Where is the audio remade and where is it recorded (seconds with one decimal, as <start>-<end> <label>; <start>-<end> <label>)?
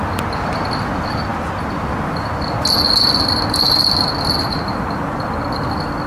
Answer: 0.0-6.1 recorded